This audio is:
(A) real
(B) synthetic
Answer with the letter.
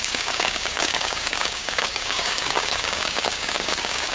B